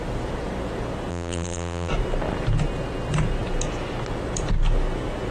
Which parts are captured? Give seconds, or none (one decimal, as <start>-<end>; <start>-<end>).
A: 0.0-1.1; 1.9-5.3